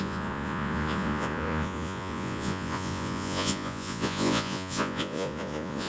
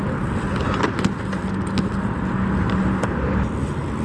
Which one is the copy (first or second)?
first